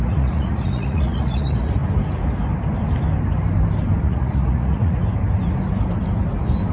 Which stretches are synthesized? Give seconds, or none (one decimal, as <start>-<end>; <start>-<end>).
0.0-1.8; 4.0-5.0